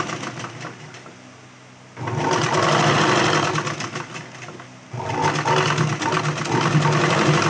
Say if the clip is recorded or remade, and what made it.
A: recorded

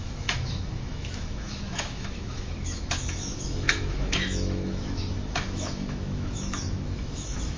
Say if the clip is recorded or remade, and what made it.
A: remade, autoencoder, DAC-VAE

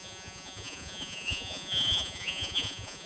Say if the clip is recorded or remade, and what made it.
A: remade, vocoder, Vocos